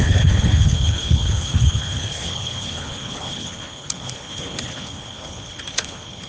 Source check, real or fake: fake